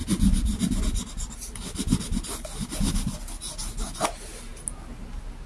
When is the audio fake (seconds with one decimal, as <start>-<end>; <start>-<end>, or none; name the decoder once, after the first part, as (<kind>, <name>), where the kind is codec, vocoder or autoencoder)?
none